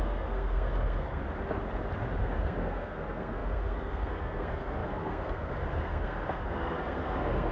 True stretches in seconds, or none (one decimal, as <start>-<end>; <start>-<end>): 1.2-2.2